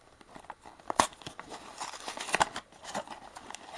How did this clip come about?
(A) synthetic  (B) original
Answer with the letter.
B